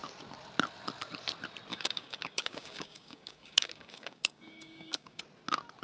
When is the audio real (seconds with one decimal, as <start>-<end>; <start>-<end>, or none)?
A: 0.0-1.7; 5.2-5.8